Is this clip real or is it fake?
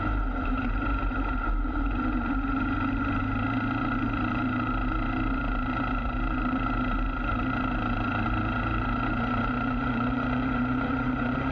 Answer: fake